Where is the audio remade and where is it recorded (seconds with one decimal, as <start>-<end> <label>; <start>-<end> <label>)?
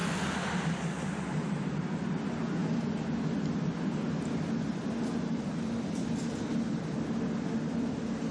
0.0-8.3 recorded